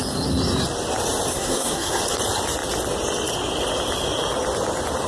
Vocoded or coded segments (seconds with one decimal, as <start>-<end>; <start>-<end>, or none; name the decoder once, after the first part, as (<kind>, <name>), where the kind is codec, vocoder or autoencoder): 1.3-2.0 (codec, SNAC)